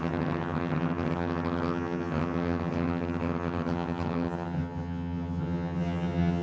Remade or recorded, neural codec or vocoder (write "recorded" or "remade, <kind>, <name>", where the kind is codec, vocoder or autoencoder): remade, vocoder, HiFi-GAN